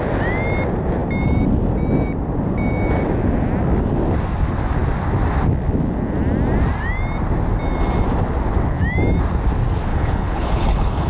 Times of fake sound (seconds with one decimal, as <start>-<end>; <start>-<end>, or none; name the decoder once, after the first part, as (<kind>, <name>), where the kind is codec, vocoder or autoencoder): 9.9-11.1 (codec, HILCodec)